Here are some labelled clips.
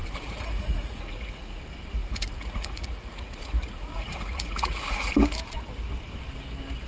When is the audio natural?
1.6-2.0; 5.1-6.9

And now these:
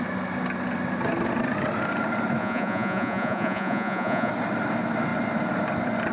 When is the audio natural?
0.0-2.4; 4.3-6.1

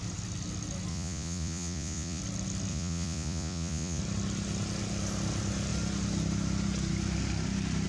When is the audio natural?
0.0-0.9; 2.2-2.7; 4.0-7.9

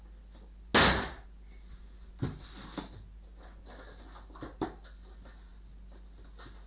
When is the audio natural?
0.0-6.7

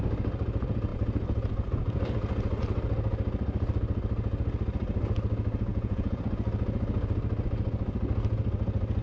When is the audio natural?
0.0-5.7; 6.2-9.0

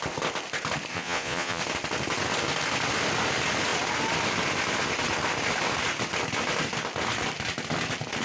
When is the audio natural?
0.0-0.9; 1.6-8.2

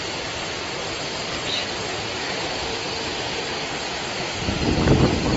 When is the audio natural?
0.0-5.4

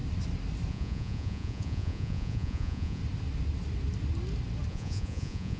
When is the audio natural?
0.0-0.7; 3.0-4.7